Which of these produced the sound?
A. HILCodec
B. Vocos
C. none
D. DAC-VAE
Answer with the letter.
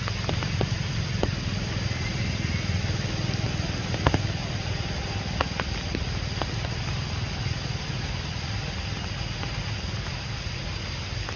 C